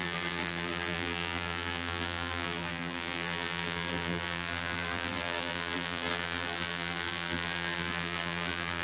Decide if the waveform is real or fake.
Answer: fake